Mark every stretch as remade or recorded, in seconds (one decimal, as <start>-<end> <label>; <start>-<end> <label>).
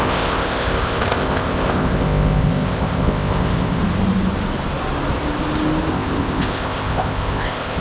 0.0-3.8 remade; 3.8-5.9 recorded; 5.9-7.8 remade